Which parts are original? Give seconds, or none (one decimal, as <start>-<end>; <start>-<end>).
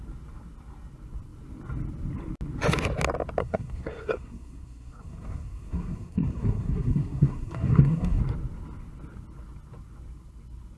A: 0.0-3.4; 8.2-10.8